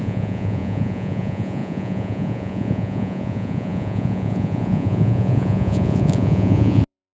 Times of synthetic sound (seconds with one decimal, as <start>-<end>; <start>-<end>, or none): 0.0-7.1